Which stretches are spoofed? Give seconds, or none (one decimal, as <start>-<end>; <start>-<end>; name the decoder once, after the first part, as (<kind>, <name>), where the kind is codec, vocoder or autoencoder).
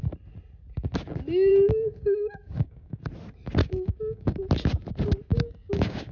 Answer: 1.5-3.0 (codec, DAC); 3.6-4.4; 5.3-6.1